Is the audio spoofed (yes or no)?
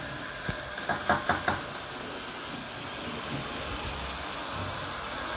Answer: no